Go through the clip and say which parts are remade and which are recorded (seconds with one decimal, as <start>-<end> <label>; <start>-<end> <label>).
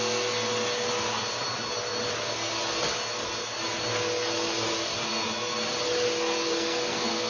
0.0-6.5 recorded; 6.5-7.3 remade